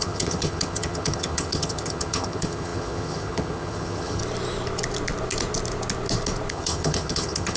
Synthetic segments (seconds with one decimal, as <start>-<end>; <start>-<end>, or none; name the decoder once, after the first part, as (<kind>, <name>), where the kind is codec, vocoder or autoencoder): 0.0-4.2 (vocoder, HiFi-GAN); 6.5-7.6